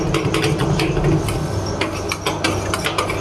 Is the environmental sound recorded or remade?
recorded